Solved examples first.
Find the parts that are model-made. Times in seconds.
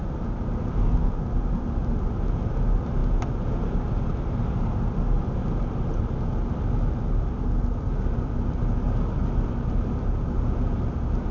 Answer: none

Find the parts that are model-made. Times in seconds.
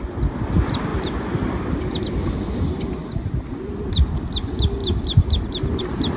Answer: 4.8-5.8 (vocoder, BigVGAN v2)